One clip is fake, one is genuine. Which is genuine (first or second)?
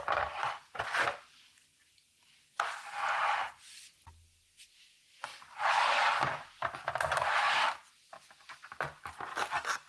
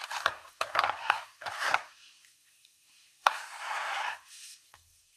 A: first